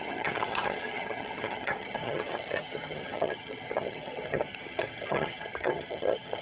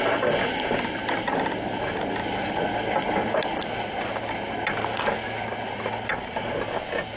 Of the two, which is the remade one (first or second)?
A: first